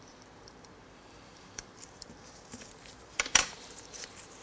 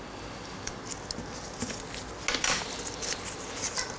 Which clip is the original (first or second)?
second